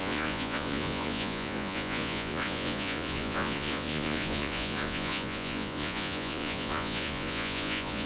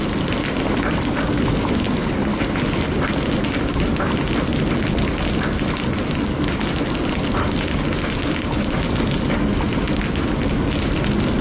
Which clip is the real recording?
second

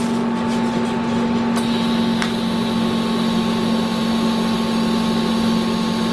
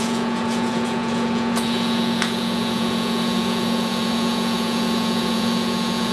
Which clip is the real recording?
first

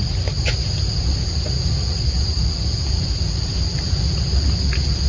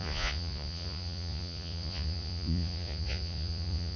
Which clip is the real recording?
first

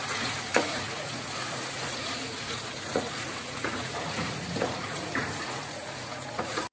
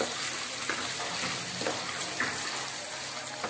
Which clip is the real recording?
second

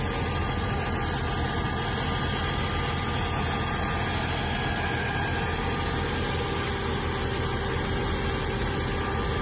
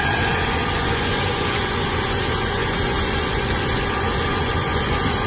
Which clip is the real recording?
first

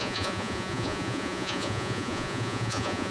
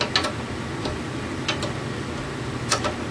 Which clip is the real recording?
second